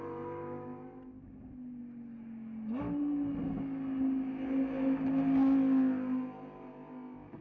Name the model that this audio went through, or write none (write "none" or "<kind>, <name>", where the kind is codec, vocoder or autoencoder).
none